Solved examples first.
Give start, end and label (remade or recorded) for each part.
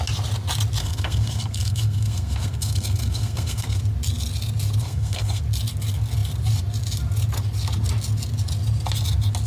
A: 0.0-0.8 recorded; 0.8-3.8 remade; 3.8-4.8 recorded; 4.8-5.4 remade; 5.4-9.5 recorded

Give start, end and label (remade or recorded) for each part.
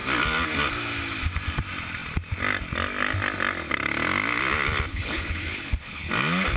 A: 0.0-4.9 recorded; 4.9-6.1 remade; 6.1-6.6 recorded